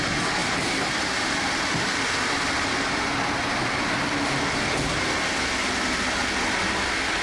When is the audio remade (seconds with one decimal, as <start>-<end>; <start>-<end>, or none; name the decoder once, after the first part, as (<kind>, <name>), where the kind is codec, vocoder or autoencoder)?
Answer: 0.4-2.0 (vocoder, BigVGAN v2)